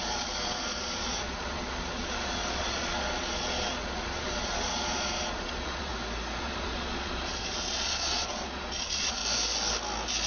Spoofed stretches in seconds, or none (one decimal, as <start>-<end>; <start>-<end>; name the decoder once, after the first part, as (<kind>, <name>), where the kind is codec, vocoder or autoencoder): 0.0-5.9 (vocoder, Vocos); 6.4-9.2